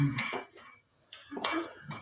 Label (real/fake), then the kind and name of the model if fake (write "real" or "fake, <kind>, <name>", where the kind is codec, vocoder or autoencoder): fake, vocoder, Vocos